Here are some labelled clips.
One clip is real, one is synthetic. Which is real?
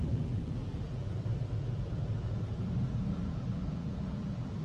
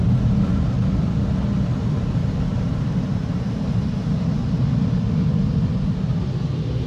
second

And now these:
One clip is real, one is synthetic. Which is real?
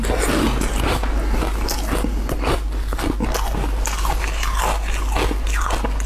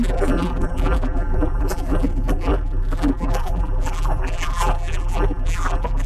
first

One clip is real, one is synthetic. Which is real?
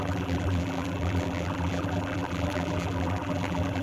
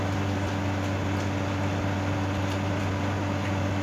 second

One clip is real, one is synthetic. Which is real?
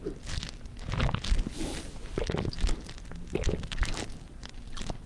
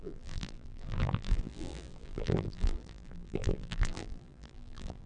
first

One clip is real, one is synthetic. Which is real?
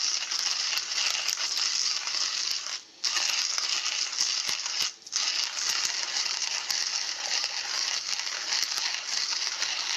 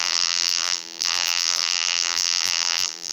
first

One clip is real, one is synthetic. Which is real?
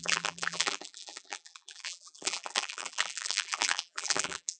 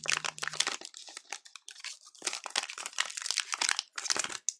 second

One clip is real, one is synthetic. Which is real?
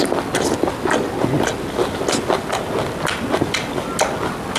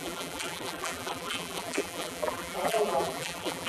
first